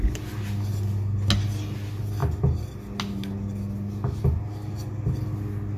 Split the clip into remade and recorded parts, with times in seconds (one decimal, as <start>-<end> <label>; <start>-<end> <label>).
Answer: 0.0-5.8 recorded